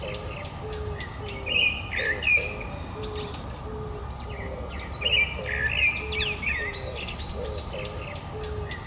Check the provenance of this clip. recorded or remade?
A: recorded